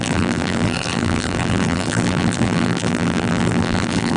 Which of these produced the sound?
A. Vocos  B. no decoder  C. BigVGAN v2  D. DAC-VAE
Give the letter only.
C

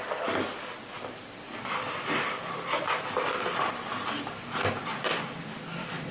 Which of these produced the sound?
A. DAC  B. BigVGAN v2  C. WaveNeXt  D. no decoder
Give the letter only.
D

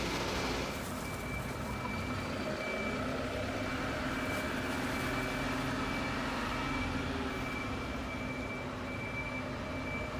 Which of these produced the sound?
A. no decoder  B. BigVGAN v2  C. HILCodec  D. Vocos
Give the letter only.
A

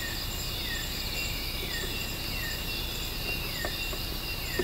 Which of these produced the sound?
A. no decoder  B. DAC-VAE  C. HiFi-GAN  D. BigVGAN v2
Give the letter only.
A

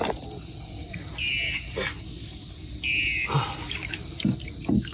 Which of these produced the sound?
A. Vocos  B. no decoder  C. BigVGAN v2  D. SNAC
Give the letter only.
B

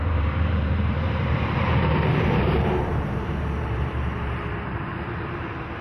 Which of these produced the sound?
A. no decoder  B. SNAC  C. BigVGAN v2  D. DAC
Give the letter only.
C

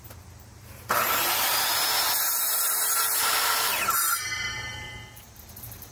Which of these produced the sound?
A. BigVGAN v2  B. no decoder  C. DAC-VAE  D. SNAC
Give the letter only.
A